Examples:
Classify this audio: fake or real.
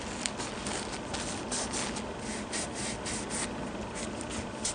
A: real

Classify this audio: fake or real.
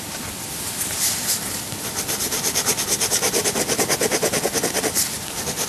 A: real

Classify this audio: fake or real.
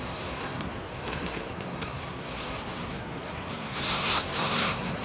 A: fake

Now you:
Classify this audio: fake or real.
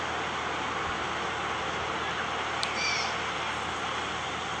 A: real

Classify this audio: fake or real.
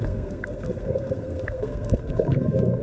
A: fake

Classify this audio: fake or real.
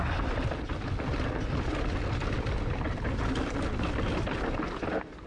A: real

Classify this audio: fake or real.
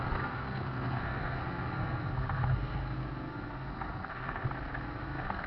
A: fake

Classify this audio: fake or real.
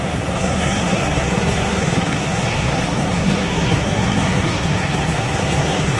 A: fake